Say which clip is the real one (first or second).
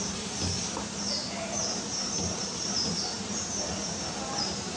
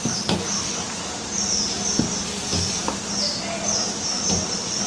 second